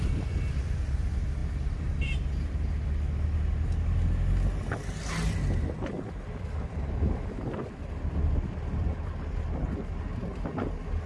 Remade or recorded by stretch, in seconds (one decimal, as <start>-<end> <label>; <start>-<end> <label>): 0.0-11.1 recorded